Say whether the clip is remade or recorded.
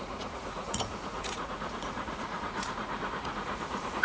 remade